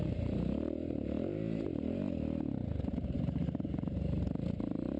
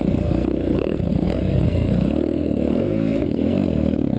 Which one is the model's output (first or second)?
second